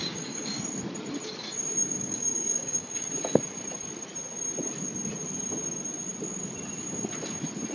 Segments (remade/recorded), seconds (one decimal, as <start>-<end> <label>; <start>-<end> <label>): 0.0-0.5 remade; 0.5-1.8 recorded; 1.8-3.1 remade; 3.1-7.7 recorded